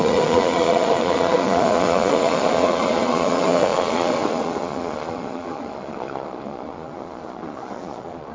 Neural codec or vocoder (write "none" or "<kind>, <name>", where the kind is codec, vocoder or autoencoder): vocoder, Vocos